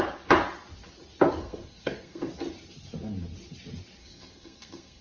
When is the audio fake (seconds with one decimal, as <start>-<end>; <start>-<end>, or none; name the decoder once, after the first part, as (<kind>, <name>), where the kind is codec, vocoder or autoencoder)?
1.4-2.3 (codec, SNAC); 4.0-5.0